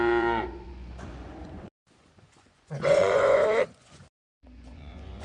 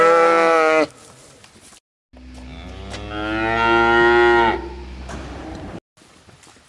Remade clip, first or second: first